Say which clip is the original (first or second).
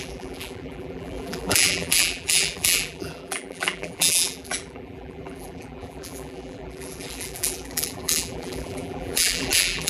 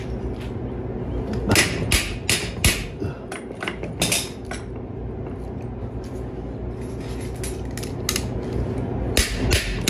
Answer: second